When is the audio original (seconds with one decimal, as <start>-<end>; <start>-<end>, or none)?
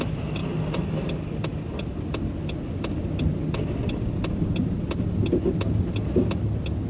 0.0-6.9